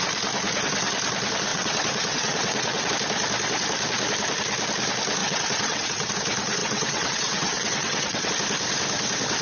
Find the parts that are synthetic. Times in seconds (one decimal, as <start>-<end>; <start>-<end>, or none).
1.5-2.9; 5.2-6.1; 6.6-8.3